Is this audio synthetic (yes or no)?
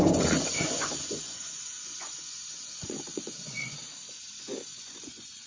yes